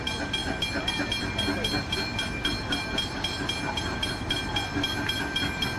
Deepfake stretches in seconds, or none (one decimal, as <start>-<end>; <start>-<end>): none